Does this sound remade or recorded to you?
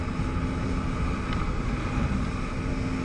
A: recorded